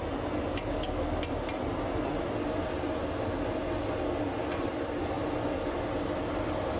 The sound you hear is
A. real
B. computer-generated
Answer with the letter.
A